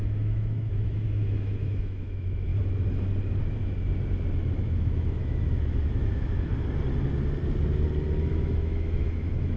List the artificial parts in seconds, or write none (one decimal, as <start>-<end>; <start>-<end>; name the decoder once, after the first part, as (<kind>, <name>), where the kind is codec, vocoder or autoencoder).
0.0-2.5 (autoencoder, DAC-VAE); 4.6-6.5; 8.3-9.6